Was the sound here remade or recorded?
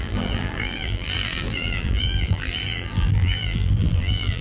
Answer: remade